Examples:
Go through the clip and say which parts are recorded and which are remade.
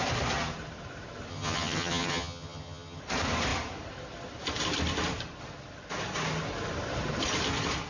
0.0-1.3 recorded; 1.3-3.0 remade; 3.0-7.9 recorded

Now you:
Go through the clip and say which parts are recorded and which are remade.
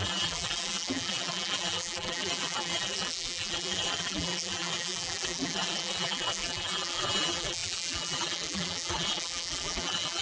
0.0-10.2 remade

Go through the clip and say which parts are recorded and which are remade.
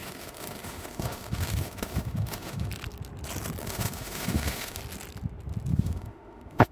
0.0-2.7 remade; 2.7-3.6 recorded; 3.6-4.8 remade; 4.8-5.7 recorded; 5.7-6.7 remade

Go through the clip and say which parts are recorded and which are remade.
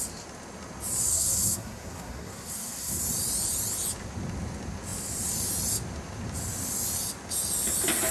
0.0-1.1 recorded; 1.1-3.0 remade; 3.0-8.1 recorded